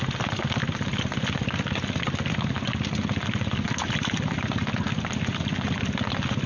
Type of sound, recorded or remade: recorded